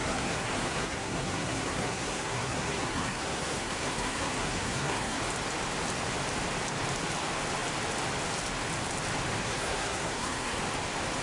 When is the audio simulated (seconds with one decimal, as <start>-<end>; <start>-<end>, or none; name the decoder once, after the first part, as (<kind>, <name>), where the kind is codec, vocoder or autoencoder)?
0.0-5.2 (codec, SNAC); 9.4-10.6